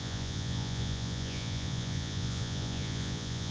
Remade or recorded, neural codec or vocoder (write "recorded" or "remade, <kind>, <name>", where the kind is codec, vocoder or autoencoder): remade, vocoder, Vocos